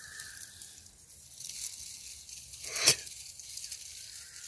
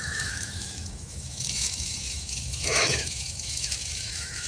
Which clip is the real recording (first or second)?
first